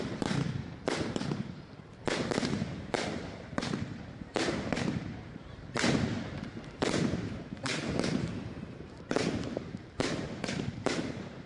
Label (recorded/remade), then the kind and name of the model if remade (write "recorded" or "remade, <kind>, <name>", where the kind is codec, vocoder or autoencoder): remade, vocoder, BigVGAN v2